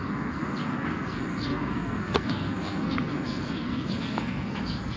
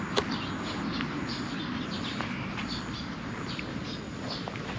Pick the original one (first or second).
second